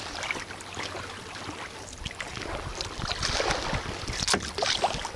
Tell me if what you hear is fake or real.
real